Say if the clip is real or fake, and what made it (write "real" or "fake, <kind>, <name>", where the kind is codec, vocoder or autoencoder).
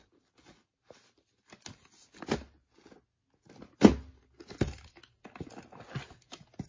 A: real